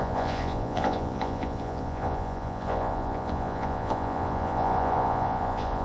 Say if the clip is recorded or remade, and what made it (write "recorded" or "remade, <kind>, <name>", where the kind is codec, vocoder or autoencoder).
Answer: remade, vocoder, Vocos